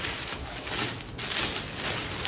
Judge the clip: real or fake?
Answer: real